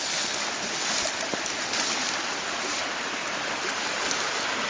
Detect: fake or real real